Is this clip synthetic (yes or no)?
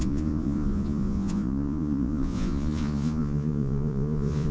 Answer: yes